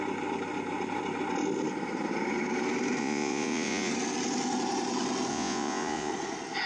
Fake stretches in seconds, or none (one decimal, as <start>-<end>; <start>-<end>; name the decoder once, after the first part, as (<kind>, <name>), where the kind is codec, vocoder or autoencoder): 3.0-3.9 (vocoder, Vocos); 5.3-6.1